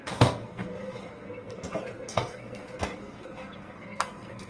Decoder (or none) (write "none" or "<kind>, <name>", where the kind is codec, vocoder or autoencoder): codec, SNAC